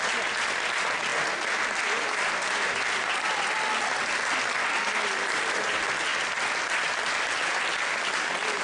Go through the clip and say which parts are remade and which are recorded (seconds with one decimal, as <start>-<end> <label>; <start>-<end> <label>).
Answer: 0.0-8.6 recorded